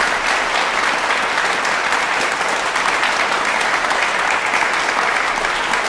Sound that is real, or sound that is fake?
real